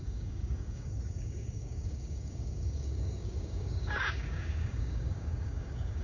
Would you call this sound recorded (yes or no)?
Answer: no